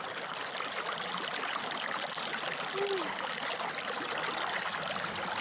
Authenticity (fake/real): real